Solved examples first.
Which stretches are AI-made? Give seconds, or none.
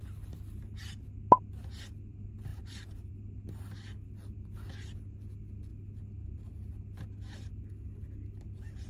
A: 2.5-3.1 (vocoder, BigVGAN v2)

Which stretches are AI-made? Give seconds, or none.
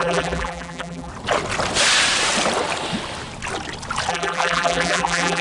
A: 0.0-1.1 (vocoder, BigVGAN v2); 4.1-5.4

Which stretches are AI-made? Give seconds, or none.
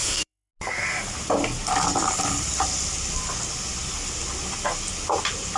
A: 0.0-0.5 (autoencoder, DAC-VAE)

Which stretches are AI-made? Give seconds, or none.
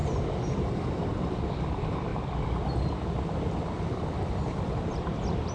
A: 0.7-2.1 (vocoder, BigVGAN v2); 4.5-5.5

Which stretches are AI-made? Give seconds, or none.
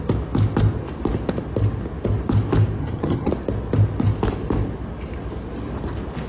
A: 2.8-3.3 (vocoder, HiFi-GAN)